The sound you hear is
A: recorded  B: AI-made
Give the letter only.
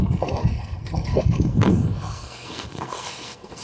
B